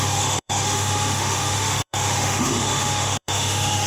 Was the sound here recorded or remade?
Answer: remade